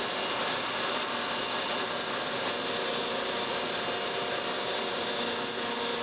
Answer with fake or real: real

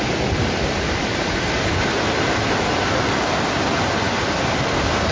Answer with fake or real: real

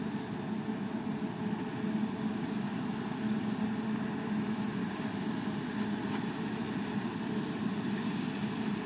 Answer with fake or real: real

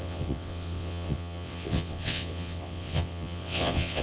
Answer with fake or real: fake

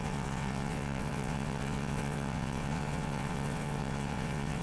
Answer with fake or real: fake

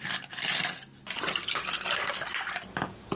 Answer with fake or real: real